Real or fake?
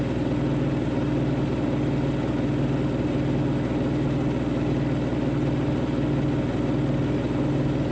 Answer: real